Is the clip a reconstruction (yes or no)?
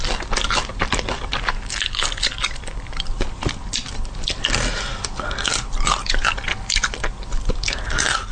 no